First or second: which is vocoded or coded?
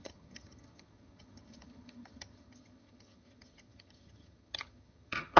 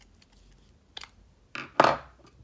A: first